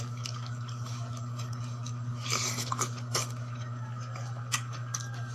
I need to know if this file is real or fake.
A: fake